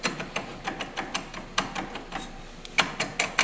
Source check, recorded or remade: recorded